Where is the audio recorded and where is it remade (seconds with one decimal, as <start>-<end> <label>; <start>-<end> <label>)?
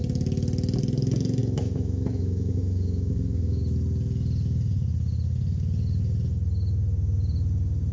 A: 0.0-1.4 recorded; 1.4-3.6 remade; 3.6-7.9 recorded